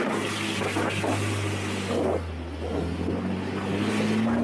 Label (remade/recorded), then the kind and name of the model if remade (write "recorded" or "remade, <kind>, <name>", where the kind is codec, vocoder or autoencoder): recorded